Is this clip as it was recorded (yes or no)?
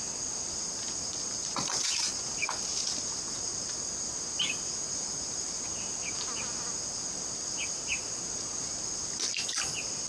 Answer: yes